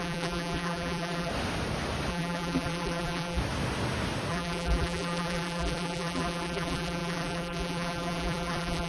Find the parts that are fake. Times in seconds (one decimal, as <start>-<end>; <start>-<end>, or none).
0.0-1.3; 2.1-3.4; 4.3-8.9